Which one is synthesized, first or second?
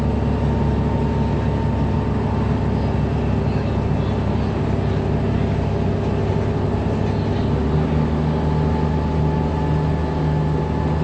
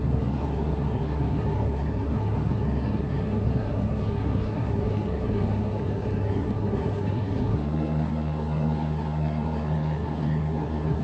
second